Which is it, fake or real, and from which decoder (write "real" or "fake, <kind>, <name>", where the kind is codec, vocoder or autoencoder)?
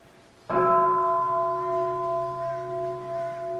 real